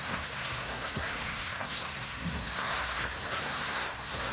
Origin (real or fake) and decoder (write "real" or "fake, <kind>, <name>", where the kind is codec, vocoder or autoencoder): fake, codec, SNAC